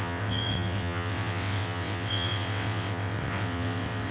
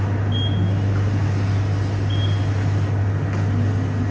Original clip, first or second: second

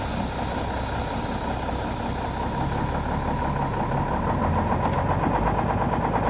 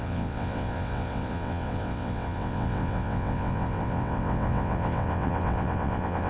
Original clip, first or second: first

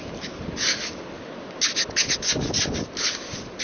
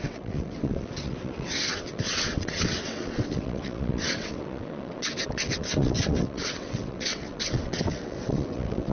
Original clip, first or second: first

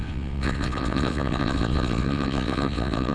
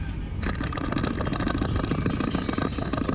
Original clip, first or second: second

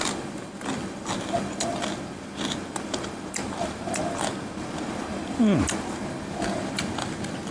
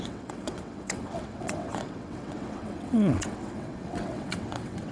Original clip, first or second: first